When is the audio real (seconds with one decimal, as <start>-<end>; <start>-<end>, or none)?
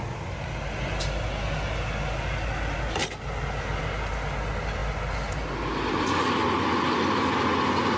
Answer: 0.0-8.0